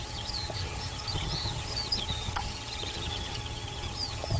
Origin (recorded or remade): remade